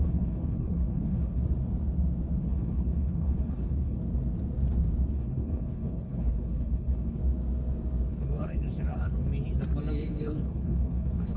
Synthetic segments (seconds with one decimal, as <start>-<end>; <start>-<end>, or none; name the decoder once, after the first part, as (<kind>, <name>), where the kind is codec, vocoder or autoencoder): 0.0-1.4 (codec, HILCodec); 2.4-4.0; 5.1-7.2; 8.1-9.3; 10.0-11.4

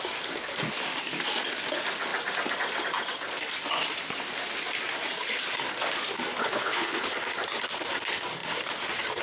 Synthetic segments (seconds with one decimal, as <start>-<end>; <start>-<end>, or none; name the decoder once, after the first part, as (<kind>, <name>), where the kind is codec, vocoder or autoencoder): 6.4-7.1 (codec, HILCodec)

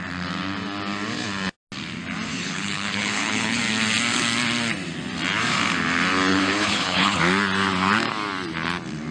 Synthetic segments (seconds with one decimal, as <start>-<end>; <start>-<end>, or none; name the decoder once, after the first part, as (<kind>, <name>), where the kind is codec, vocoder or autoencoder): 2.3-3.6 (codec, HILCodec); 6.3-7.2

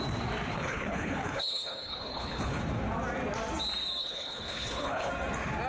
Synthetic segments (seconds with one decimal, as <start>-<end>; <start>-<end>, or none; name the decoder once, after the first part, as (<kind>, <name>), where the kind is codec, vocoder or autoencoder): 0.5-2.6 (codec, HILCodec); 4.0-5.1

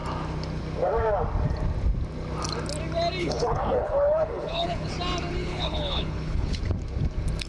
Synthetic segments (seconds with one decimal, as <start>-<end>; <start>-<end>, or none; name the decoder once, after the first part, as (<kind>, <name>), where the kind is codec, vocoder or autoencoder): 3.2-4.9 (codec, HILCodec); 5.4-6.6